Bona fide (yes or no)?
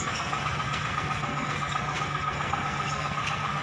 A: no